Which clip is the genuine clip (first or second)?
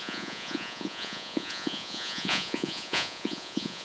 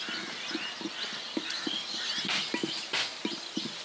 second